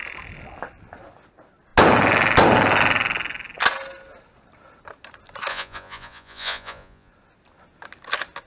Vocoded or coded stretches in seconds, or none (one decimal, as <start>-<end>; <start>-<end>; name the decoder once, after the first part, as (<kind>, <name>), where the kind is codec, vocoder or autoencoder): 5.5-7.1 (vocoder, Vocos)